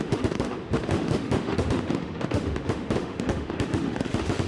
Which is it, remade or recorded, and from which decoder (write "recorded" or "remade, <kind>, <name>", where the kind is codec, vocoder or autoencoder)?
remade, autoencoder, DAC-VAE